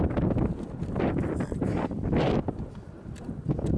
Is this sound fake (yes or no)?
yes